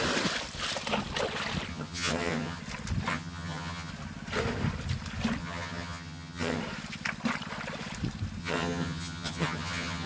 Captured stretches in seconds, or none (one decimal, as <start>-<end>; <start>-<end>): 0.0-1.7; 2.6-3.1; 3.9-5.4; 6.6-8.4